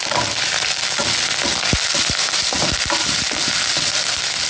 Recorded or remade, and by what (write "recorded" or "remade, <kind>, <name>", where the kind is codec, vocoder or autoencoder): recorded